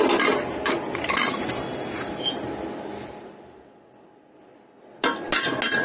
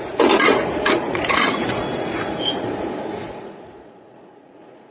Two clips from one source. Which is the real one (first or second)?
first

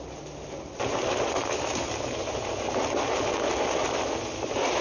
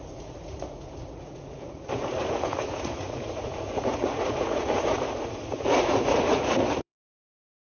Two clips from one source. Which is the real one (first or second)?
first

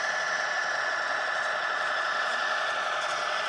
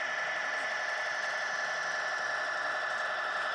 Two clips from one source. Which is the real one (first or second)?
second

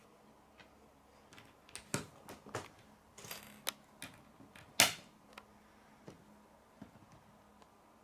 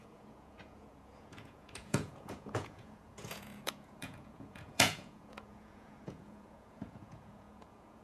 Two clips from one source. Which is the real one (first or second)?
first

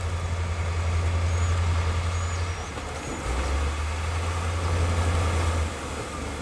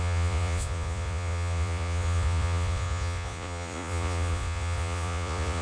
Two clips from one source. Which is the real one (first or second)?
first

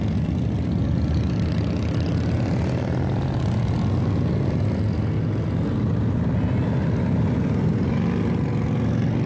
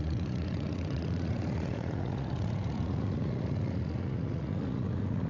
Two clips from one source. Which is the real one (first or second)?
first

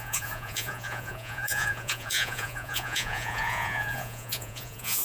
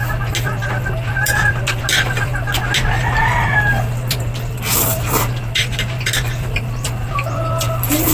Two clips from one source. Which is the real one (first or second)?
second